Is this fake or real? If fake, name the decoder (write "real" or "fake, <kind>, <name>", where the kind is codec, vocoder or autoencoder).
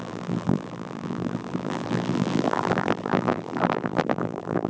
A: fake, vocoder, BigVGAN v2